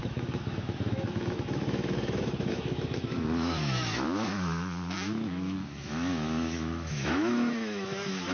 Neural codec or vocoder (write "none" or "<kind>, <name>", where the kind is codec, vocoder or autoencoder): autoencoder, DAC-VAE